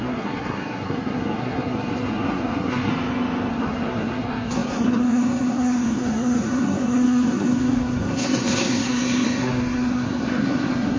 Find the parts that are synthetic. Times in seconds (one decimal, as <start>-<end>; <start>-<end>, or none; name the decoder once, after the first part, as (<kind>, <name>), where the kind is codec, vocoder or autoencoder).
0.0-2.9 (codec, SNAC); 3.5-11.0